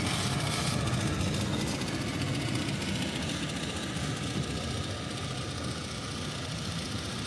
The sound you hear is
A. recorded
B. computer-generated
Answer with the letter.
A